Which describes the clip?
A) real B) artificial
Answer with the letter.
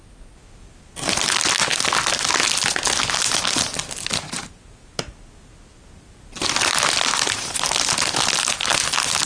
A